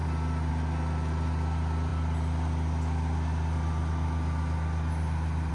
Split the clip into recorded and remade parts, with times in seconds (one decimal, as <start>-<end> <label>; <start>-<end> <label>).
0.0-5.5 recorded